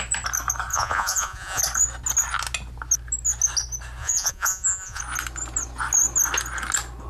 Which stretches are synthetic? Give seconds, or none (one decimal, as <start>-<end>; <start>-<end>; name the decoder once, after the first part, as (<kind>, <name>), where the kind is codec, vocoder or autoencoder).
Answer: 0.7-1.6 (vocoder, Vocos); 4.0-5.0